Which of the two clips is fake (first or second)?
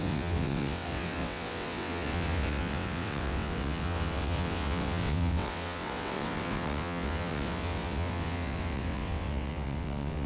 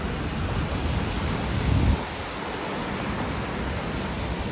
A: first